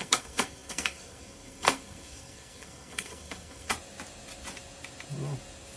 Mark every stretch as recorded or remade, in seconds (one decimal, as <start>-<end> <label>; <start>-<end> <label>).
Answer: 0.0-3.7 remade; 3.7-5.8 recorded